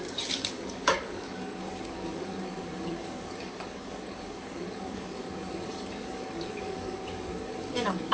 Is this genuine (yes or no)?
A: no